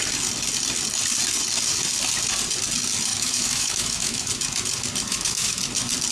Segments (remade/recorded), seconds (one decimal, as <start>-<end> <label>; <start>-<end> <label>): 0.0-3.1 recorded; 3.1-4.3 remade; 4.3-5.1 recorded; 5.1-5.6 remade; 5.6-6.1 recorded